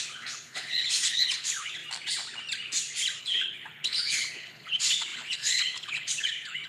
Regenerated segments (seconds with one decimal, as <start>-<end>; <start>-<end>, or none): 0.0-1.8; 3.2-6.7

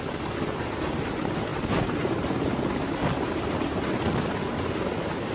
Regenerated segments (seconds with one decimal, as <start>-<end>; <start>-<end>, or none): none

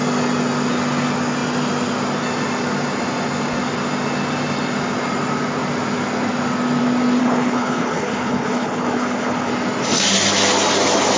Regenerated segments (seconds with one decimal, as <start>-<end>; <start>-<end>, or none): 7.2-9.5